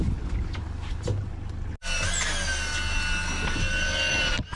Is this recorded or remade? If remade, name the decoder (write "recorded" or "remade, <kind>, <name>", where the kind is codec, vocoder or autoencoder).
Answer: recorded